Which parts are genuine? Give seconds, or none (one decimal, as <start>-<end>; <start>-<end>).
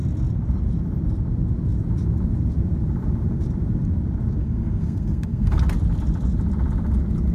0.0-4.4; 5.6-7.3